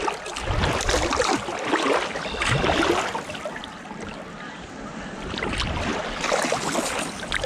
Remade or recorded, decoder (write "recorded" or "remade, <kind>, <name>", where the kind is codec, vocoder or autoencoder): recorded